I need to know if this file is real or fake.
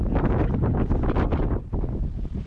real